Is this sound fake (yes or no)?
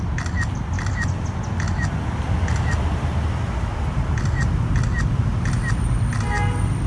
no